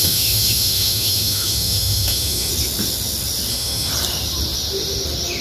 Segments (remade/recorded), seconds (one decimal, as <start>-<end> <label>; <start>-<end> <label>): 0.0-2.5 remade; 2.5-3.5 recorded; 3.5-3.9 remade; 3.9-5.4 recorded